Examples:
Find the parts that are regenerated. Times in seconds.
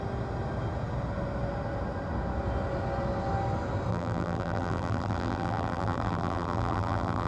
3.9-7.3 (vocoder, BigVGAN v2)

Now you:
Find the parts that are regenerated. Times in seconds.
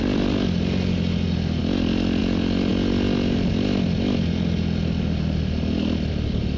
0.0-2.7 (vocoder, BigVGAN v2)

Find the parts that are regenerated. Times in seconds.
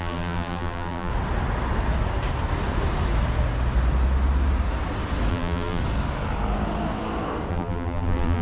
0.0-1.1 (vocoder, BigVGAN v2); 5.3-5.8; 7.5-8.4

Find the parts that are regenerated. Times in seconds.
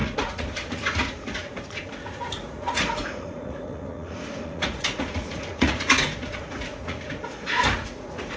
0.0-8.4 (vocoder, Vocos)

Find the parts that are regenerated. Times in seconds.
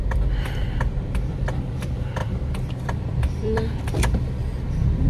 0.6-1.4 (vocoder, BigVGAN v2); 2.2-3.8